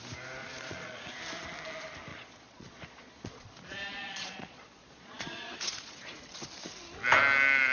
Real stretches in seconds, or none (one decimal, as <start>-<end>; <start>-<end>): 0.0-0.4; 1.2-2.1; 6.2-7.7